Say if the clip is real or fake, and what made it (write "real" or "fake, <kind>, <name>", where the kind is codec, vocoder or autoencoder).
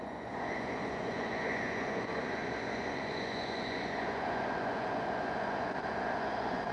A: fake, vocoder, Vocos